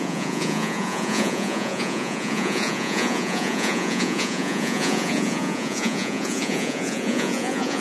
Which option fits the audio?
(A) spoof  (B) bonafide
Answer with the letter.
A